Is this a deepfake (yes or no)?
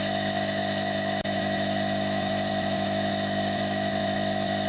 yes